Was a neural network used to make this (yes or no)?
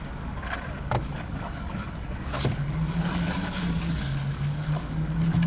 yes